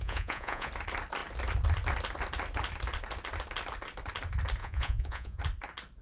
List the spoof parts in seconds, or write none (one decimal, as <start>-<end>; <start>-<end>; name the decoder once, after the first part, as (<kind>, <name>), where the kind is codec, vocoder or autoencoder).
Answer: 0.0-0.7 (vocoder, Vocos); 4.6-5.4